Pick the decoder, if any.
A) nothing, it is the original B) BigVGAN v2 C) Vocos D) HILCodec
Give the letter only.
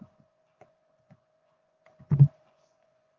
C